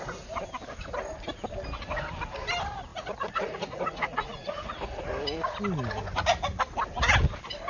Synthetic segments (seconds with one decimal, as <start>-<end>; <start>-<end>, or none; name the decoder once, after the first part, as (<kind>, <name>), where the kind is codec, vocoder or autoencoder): 2.9-5.0 (vocoder, Vocos)